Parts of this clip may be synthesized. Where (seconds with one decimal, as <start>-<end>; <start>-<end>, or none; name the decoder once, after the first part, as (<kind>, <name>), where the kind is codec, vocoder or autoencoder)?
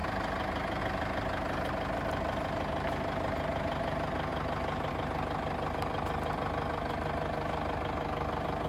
none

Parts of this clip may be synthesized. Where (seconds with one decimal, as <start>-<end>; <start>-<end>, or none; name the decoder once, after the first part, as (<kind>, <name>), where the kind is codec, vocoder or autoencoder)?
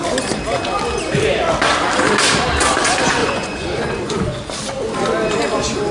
3.2-4.5 (vocoder, Vocos)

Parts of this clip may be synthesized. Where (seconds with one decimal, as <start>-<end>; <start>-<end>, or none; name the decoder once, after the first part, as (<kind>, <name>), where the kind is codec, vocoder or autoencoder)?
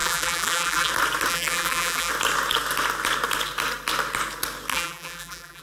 0.0-0.9 (vocoder, BigVGAN v2); 1.3-2.1; 4.7-5.6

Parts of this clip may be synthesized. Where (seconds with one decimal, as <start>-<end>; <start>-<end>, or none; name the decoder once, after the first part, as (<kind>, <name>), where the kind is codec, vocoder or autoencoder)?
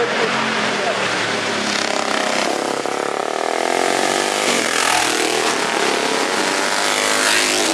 none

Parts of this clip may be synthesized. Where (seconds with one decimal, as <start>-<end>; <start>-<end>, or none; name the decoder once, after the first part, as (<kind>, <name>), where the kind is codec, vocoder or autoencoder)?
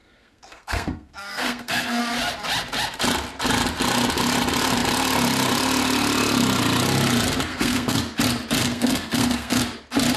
0.0-2.0 (codec, SNAC); 7.5-8.0; 8.6-9.6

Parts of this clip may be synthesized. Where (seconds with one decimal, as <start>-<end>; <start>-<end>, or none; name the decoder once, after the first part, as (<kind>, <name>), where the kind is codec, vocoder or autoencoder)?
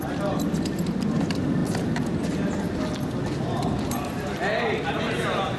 none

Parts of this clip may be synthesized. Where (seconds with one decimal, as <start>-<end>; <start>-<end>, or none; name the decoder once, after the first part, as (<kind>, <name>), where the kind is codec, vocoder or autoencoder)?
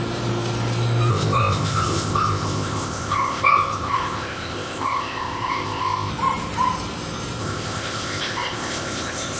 1.1-6.1 (codec, ZipCodec); 7.4-9.4